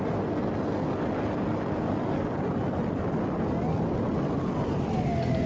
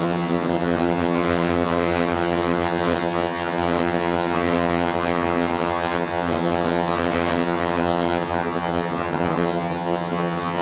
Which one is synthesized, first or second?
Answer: second